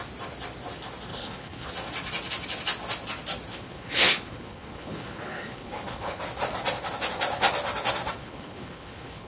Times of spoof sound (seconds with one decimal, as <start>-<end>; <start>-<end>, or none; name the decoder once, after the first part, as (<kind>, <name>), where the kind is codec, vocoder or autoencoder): 1.1-1.7 (codec, HILCodec); 3.5-6.2; 8.2-9.3